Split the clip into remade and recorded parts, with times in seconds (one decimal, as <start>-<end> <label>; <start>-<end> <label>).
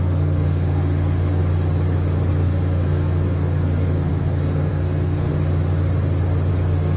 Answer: 0.0-1.4 remade; 1.4-2.3 recorded; 2.3-5.3 remade; 5.3-6.5 recorded; 6.5-7.0 remade